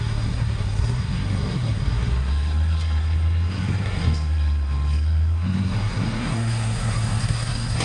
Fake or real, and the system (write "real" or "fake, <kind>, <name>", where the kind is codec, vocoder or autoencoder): fake, codec, SNAC